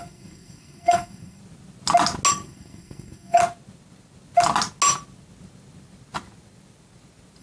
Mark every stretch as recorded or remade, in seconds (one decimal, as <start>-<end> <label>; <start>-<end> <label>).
0.0-1.4 remade; 1.4-2.3 recorded; 2.3-3.4 remade; 3.4-7.4 recorded

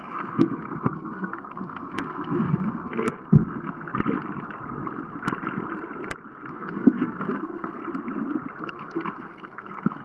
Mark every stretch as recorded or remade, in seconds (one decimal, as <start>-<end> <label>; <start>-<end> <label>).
0.0-3.9 remade; 3.9-6.5 recorded; 6.5-7.8 remade; 7.8-8.6 recorded; 8.6-10.0 remade

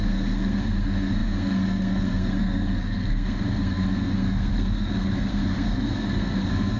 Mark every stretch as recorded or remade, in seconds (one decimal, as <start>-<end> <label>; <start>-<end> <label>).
0.0-6.8 remade

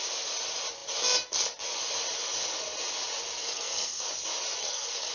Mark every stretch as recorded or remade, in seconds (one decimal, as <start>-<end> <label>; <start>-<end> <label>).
0.0-3.4 recorded; 3.4-4.1 remade; 4.1-4.6 recorded; 4.6-5.1 remade

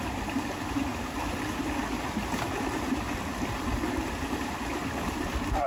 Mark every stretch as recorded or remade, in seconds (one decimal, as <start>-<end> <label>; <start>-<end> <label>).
0.0-5.7 recorded